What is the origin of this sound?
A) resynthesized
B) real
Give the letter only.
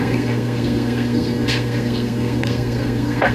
A